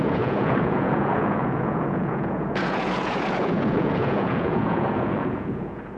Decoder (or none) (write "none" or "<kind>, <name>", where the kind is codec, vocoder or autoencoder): vocoder, Vocos